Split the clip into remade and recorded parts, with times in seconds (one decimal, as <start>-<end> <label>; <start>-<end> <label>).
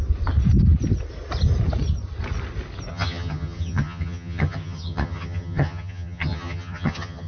0.0-2.9 recorded; 2.9-7.3 remade